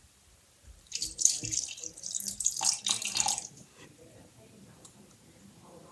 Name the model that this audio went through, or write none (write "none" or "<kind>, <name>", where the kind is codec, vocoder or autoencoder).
vocoder, BigVGAN v2